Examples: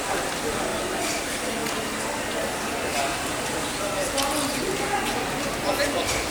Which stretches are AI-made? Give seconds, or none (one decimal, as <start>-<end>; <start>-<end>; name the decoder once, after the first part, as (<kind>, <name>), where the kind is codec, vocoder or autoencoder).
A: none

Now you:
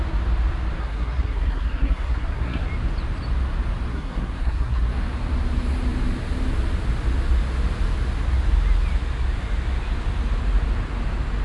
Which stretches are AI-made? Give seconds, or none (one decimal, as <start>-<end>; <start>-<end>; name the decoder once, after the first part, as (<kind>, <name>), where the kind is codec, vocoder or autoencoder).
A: 0.8-2.7 (codec, SNAC); 3.9-4.9

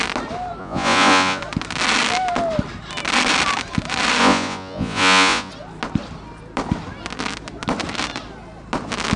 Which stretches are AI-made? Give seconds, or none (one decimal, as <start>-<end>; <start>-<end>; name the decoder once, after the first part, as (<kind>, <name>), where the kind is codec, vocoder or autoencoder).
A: 0.6-1.4 (vocoder, Vocos); 4.2-5.5

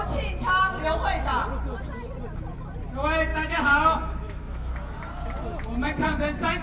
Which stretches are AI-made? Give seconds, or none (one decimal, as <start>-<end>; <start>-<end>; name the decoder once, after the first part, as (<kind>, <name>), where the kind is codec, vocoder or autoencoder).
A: 3.3-4.7 (autoencoder, DAC-VAE)